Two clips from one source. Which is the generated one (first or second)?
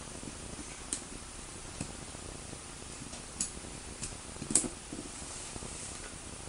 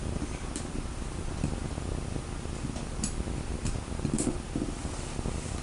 first